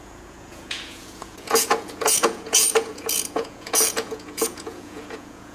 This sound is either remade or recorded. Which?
remade